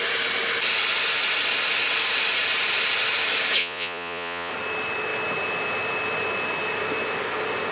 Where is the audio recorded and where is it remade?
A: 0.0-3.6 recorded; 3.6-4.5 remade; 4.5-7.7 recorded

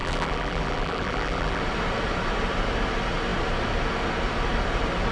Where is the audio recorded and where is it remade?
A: 0.0-1.6 remade; 1.6-5.1 recorded

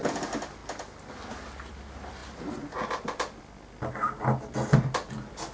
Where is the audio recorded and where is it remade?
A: 0.0-5.5 recorded

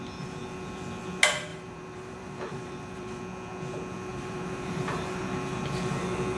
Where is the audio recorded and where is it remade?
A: 0.0-1.5 recorded; 1.5-3.2 remade; 3.2-4.1 recorded; 4.1-4.8 remade; 4.8-6.4 recorded

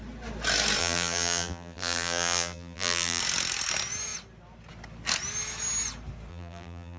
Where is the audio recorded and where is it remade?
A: 0.0-0.8 recorded; 0.8-3.2 remade; 3.2-6.3 recorded; 6.3-7.0 remade

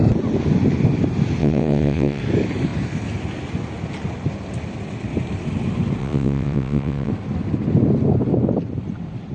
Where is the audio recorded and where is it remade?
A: 0.0-1.4 recorded; 1.4-2.2 remade; 2.2-6.0 recorded; 6.0-7.1 remade; 7.1-9.3 recorded

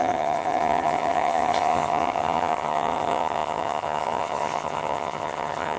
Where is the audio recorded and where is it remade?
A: 0.0-5.8 remade